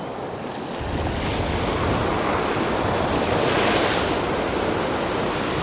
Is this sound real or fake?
real